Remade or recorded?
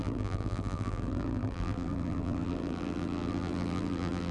remade